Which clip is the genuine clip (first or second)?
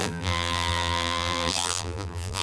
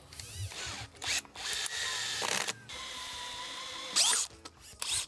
second